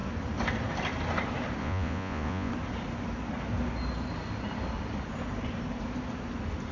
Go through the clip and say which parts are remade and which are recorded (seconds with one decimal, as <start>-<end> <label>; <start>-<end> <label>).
0.0-1.6 recorded; 1.6-2.5 remade; 2.5-6.7 recorded